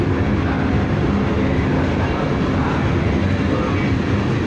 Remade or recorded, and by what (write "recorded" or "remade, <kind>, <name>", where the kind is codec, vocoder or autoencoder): recorded